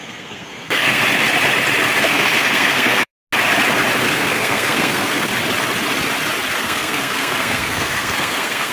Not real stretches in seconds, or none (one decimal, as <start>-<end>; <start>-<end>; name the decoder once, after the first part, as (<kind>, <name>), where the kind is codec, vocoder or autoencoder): 0.0-1.0 (codec, SNAC); 2.0-3.1; 4.0-5.3; 6.6-8.7